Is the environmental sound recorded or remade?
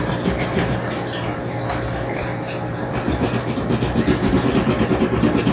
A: recorded